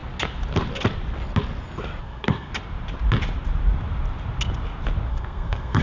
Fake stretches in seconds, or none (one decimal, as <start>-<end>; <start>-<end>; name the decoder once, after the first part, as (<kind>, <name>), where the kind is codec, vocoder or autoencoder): 2.0-2.5 (codec, SNAC); 5.1-5.8